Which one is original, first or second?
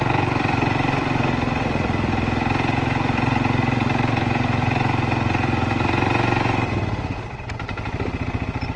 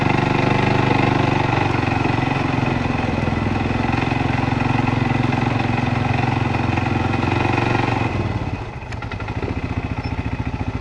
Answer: second